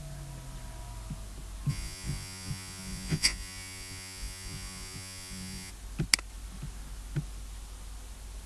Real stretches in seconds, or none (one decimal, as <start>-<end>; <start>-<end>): 0.0-1.7; 5.7-8.5